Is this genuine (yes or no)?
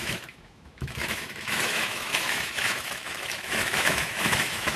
no